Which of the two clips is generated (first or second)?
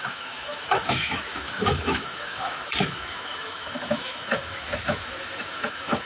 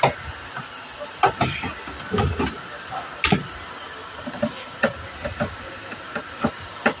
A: first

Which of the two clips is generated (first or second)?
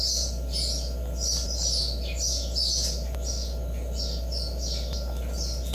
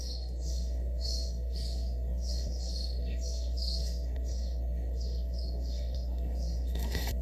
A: second